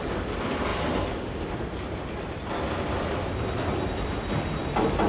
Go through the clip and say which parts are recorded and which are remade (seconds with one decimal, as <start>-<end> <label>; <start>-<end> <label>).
0.0-5.1 recorded